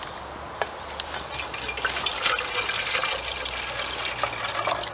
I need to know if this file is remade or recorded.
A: recorded